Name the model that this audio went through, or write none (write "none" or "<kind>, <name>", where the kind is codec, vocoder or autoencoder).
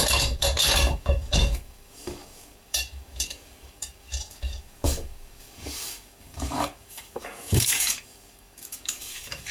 codec, DAC